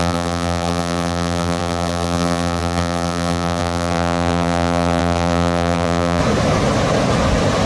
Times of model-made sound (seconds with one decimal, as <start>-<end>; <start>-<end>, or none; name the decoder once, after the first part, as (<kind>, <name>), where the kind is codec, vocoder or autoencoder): 0.0-6.2 (vocoder, BigVGAN v2)